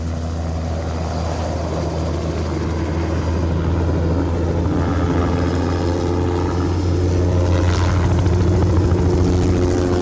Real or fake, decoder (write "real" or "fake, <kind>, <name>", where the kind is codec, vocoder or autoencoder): real